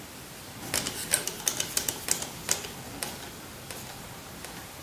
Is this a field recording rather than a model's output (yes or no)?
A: yes